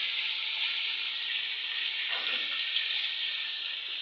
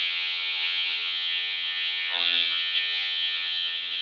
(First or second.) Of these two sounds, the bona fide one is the first